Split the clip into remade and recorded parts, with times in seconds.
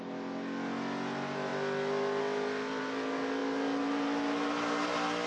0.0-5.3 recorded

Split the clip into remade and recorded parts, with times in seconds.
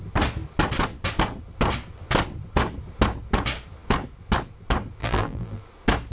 0.0-5.0 recorded; 5.0-5.6 remade; 5.6-6.1 recorded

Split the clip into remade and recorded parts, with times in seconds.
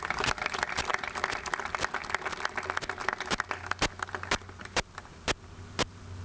0.0-6.2 recorded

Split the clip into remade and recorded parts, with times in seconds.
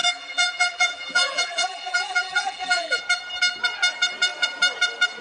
0.0-3.0 remade; 3.0-5.2 recorded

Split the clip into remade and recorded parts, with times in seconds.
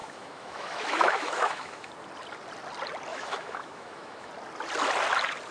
0.0-1.9 remade; 1.9-3.1 recorded; 3.1-4.3 remade; 4.3-5.5 recorded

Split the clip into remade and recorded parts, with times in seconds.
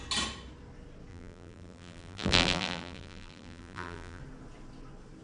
0.0-1.1 recorded; 1.1-4.2 remade; 4.2-5.2 recorded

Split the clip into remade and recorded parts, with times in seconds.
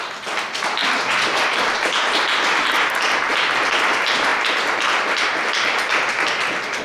0.0-6.8 recorded